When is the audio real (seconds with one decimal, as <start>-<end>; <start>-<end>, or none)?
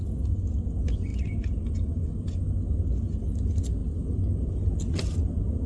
0.0-5.7